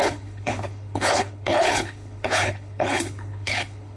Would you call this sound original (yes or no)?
no